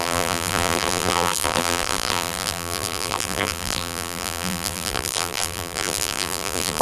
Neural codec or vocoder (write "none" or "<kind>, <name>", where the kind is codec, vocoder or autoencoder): vocoder, BigVGAN v2